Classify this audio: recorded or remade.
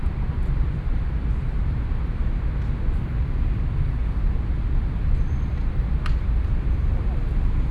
remade